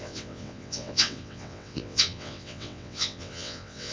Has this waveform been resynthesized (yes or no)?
yes